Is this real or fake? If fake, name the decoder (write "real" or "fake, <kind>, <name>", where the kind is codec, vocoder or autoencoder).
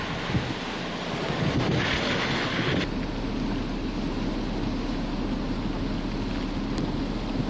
real